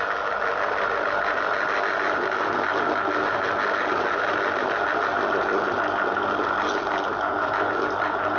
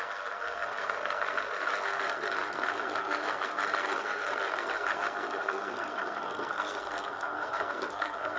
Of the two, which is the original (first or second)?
first